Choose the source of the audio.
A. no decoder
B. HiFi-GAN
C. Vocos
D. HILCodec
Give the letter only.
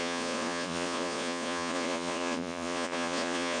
C